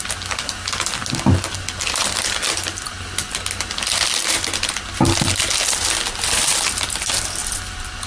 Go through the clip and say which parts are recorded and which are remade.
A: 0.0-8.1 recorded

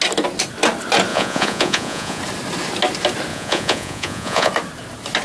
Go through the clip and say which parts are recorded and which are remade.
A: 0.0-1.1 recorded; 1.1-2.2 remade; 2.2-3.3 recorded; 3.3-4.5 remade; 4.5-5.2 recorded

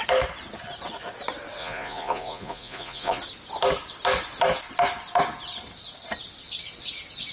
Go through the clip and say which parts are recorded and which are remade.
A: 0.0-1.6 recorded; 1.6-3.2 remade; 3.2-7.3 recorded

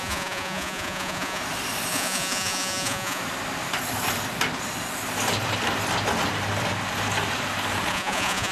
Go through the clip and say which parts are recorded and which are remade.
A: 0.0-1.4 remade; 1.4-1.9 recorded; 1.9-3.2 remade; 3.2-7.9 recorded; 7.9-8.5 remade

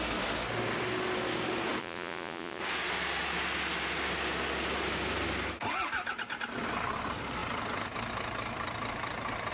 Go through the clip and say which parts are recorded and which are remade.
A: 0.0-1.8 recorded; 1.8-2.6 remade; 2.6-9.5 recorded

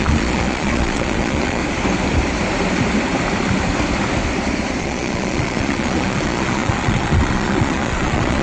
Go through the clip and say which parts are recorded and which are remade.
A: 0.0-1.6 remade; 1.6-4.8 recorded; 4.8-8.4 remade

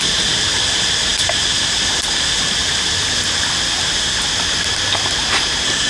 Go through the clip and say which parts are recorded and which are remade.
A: 0.0-5.9 recorded

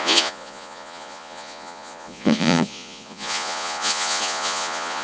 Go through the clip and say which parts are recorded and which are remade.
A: 0.0-5.0 remade